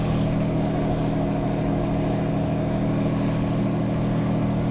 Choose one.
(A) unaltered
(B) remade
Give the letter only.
B